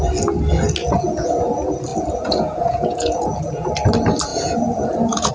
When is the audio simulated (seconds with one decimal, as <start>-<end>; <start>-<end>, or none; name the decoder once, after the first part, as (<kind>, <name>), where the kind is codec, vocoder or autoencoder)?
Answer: 0.8-1.3 (vocoder, Vocos); 1.9-3.7; 4.3-5.3

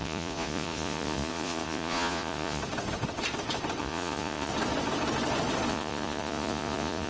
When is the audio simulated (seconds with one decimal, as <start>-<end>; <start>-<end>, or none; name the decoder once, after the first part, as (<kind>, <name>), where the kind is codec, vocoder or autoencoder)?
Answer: 0.0-2.6 (vocoder, Vocos); 3.8-4.5; 5.7-7.1

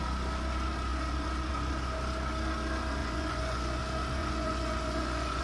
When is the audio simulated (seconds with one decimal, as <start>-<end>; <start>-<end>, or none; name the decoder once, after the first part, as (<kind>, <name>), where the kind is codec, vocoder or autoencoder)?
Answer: 3.0-3.8 (vocoder, Vocos); 4.2-5.4

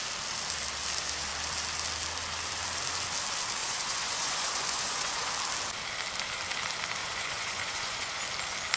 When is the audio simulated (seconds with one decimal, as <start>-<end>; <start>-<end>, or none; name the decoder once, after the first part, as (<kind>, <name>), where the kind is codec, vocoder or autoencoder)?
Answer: 3.6-5.3 (vocoder, Vocos); 7.0-8.2

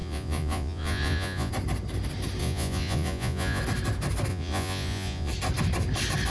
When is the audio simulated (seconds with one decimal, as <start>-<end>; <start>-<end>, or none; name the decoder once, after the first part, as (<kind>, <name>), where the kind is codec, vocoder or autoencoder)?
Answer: 0.0-1.5 (vocoder, Vocos); 2.4-3.6; 4.3-5.3

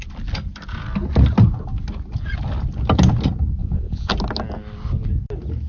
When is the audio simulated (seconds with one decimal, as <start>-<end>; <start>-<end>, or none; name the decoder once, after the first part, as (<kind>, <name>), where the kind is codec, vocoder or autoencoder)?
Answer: 3.6-4.1 (vocoder, Vocos)

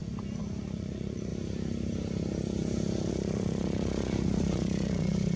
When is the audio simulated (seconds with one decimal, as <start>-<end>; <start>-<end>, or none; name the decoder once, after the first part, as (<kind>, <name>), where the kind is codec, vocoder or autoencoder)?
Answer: 0.6-1.3 (vocoder, Vocos); 3.1-5.4

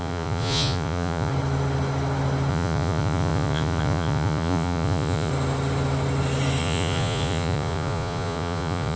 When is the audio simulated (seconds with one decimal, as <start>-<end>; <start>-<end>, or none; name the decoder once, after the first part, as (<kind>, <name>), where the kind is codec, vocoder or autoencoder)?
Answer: 0.0-1.3 (vocoder, Vocos); 2.5-5.3; 6.6-9.0